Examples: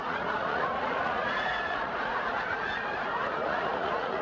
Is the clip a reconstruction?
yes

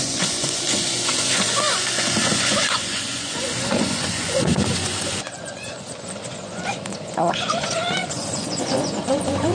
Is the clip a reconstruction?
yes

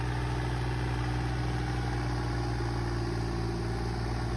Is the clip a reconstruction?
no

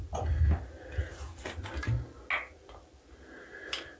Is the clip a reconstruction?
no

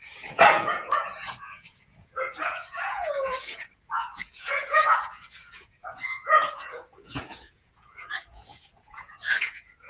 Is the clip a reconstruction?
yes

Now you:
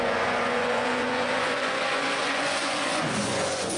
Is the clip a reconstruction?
yes